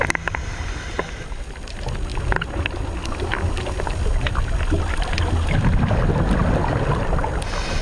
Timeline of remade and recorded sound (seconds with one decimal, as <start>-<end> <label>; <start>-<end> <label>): 0.0-7.8 recorded